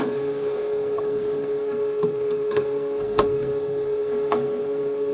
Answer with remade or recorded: remade